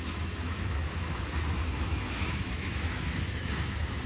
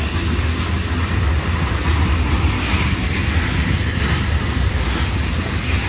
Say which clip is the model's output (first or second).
first